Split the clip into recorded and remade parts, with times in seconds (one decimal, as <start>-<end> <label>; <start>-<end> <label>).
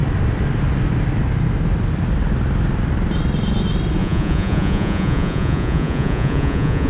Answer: 0.0-4.0 recorded; 4.0-6.9 remade